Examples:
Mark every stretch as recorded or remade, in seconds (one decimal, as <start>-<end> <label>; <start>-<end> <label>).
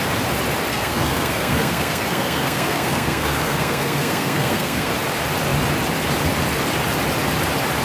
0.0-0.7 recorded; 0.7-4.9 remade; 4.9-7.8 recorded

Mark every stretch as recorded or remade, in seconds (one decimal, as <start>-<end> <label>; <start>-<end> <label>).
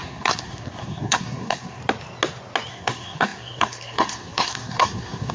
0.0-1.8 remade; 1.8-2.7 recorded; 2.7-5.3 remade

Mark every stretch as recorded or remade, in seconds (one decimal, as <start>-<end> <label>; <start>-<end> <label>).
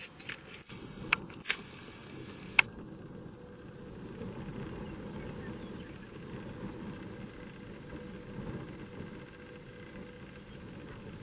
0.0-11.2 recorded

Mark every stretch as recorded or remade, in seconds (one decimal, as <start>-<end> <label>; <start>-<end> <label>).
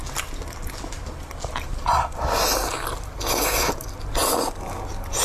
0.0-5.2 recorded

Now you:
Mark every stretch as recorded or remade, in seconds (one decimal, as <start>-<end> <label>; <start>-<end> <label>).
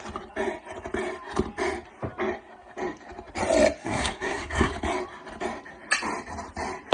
0.0-3.8 recorded; 3.8-4.7 remade; 4.7-6.9 recorded